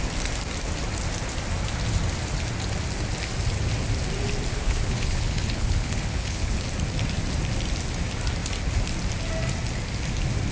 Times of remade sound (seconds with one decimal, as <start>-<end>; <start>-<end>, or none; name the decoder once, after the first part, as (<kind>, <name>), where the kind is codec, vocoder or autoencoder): 4.5-6.6 (codec, HILCodec)